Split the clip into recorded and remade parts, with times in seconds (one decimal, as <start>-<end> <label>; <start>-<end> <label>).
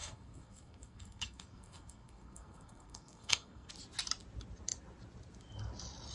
0.0-3.7 remade; 3.7-6.1 recorded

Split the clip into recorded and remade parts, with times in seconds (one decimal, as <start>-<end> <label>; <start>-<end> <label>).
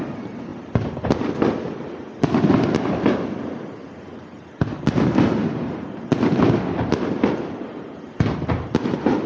0.0-9.3 recorded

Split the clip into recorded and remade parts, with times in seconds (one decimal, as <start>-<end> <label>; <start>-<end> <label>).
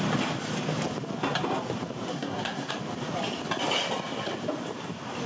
0.0-2.1 recorded; 2.1-2.7 remade; 2.7-5.3 recorded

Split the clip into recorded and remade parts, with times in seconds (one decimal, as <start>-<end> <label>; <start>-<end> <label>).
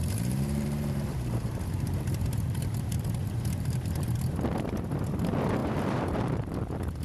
0.0-4.2 remade; 4.2-5.6 recorded; 5.6-6.3 remade; 6.3-7.0 recorded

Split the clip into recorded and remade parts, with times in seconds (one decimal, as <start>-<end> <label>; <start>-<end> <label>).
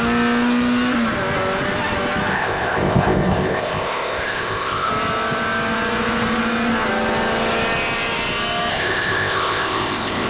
0.0-2.3 recorded; 2.3-4.9 remade; 4.9-8.7 recorded; 8.7-10.3 remade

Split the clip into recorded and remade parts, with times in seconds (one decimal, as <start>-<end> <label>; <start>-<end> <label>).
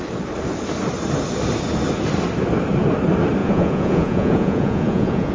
0.0-3.4 recorded; 3.4-5.3 remade